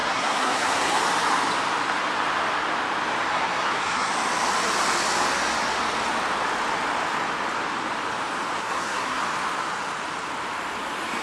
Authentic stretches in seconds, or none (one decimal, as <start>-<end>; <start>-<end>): 1.0-3.3; 4.1-8.6; 9.2-11.2